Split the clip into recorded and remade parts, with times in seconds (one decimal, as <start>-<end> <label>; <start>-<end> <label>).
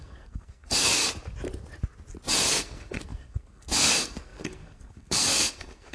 0.0-0.9 remade; 0.9-2.5 recorded; 2.5-5.9 remade